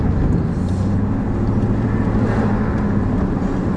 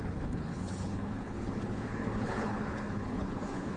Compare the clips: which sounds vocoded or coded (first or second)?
second